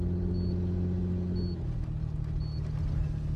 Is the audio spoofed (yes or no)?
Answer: no